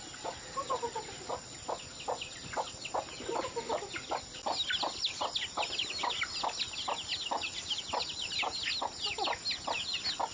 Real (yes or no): yes